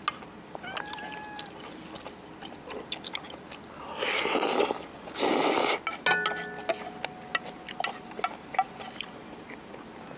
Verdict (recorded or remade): recorded